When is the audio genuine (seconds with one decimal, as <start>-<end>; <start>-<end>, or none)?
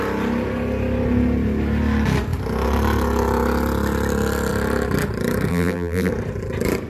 0.0-5.5; 6.1-6.9